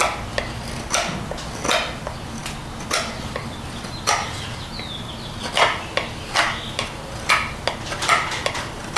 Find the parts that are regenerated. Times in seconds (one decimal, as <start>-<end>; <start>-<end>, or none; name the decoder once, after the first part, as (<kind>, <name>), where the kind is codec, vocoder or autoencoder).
none